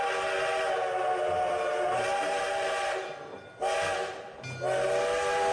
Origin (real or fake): real